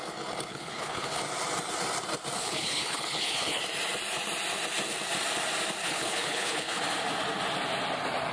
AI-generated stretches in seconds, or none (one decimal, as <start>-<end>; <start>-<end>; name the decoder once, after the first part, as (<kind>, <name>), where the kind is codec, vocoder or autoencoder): 0.5-1.2 (codec, HILCodec); 2.4-3.6; 5.8-6.8